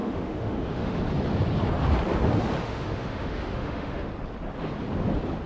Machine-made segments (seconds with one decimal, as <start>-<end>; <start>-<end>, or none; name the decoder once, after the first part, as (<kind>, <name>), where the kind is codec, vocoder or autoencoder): 0.0-1.0 (autoencoder, DAC-VAE); 2.6-4.1